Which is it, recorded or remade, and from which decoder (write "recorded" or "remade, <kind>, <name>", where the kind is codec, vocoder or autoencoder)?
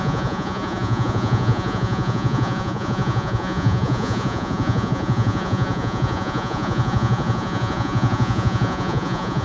remade, vocoder, Vocos